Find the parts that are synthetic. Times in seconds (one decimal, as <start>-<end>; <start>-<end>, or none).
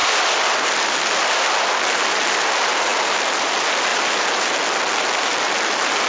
0.0-1.3; 2.9-3.5; 3.9-6.1